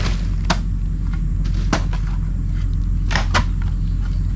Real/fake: real